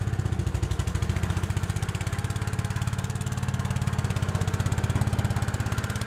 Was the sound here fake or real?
real